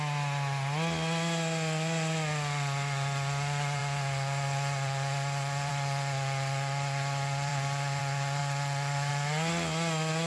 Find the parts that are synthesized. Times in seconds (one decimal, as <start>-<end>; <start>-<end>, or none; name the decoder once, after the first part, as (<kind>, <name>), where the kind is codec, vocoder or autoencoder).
none